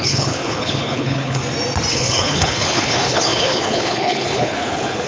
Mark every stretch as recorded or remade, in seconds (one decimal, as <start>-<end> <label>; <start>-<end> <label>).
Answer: 0.0-1.4 remade; 1.4-1.9 recorded; 1.9-5.1 remade